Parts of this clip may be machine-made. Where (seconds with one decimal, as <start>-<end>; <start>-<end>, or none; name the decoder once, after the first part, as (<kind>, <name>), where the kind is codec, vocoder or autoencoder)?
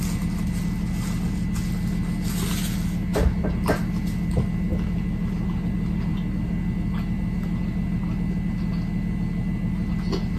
none